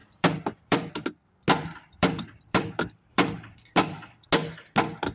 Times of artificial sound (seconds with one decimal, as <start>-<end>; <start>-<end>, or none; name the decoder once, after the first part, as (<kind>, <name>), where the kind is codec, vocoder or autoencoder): 0.0-0.9 (vocoder, BigVGAN v2); 1.6-4.3

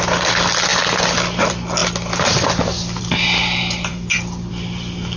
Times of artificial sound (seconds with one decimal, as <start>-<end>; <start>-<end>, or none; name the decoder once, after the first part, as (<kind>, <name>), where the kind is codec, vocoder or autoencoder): none